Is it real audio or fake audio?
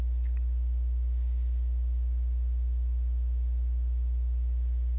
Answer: real